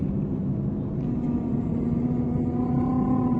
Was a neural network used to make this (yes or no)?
no